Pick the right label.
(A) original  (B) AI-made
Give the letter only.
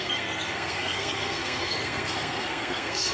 B